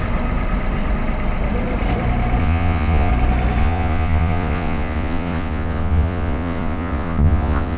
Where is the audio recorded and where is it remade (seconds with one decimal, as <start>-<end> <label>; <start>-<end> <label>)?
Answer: 0.0-2.4 recorded; 2.4-3.1 remade; 3.1-3.6 recorded; 3.6-7.8 remade